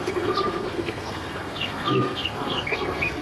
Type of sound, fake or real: fake